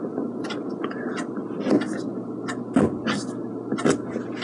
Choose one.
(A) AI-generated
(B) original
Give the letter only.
B